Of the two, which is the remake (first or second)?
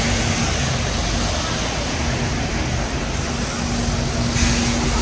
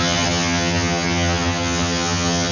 second